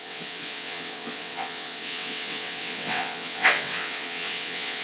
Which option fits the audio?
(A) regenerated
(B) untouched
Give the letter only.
A